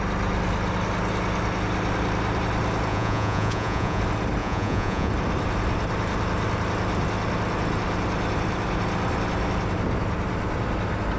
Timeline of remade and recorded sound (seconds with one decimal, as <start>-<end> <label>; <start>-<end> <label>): 0.0-2.9 recorded; 2.9-4.0 remade; 4.0-4.4 recorded; 4.4-5.1 remade; 5.1-11.2 recorded